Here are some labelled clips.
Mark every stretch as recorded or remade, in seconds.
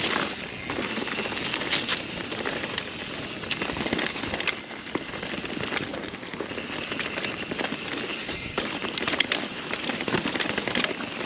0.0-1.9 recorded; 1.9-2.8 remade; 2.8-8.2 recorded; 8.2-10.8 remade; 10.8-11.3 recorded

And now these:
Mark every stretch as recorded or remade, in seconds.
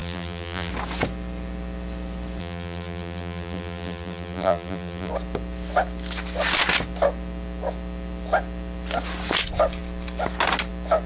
0.0-0.7 remade; 0.7-2.4 recorded; 2.4-5.1 remade; 5.1-11.1 recorded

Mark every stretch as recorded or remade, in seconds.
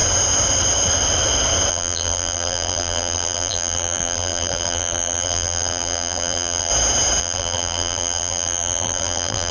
0.0-1.7 recorded; 1.7-6.7 remade; 6.7-7.2 recorded; 7.2-9.5 remade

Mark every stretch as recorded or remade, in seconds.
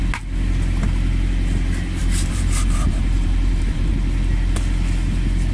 0.0-2.0 recorded; 2.0-3.9 remade; 3.9-5.5 recorded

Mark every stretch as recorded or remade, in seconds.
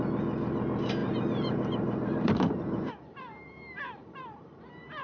0.0-1.0 recorded; 1.0-2.9 remade; 2.9-4.0 recorded; 4.0-4.6 remade; 4.6-5.0 recorded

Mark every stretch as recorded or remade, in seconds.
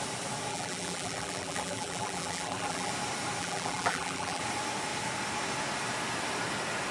0.0-0.5 recorded; 0.5-2.9 remade; 2.9-3.4 recorded; 3.4-4.4 remade; 4.4-6.9 recorded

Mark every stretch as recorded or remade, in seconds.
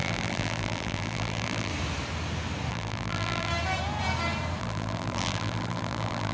0.0-1.7 remade; 1.7-2.7 recorded; 2.7-3.5 remade; 3.5-4.6 recorded; 4.6-6.3 remade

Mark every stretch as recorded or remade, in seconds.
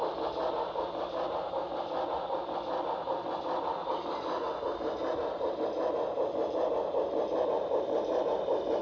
0.0-3.8 recorded; 3.8-5.6 remade; 5.6-8.8 recorded